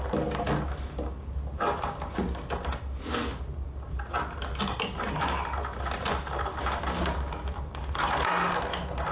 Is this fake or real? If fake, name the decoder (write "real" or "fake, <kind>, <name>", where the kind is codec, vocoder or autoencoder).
real